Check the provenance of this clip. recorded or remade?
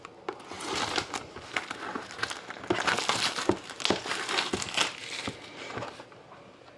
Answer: recorded